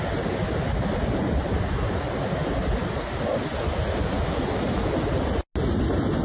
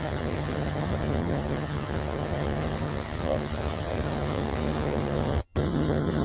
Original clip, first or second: first